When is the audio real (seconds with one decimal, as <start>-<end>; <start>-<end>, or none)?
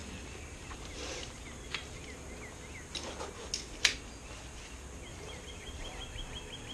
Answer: 0.0-5.1; 6.0-6.7